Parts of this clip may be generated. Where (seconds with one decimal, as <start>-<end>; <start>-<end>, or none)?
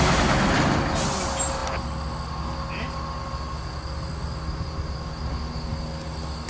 none